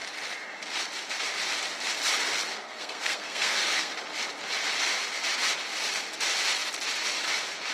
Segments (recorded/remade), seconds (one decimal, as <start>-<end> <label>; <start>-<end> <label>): 0.0-2.5 recorded; 2.5-3.9 remade; 3.9-7.7 recorded